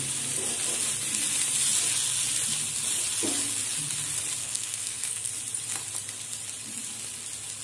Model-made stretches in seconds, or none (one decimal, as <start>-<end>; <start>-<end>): 4.4-5.3